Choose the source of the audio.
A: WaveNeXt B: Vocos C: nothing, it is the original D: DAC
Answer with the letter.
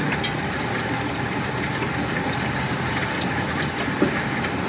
C